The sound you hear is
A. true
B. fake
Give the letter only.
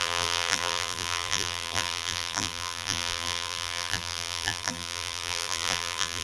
B